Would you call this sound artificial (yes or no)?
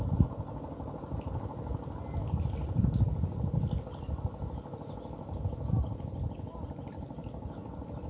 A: no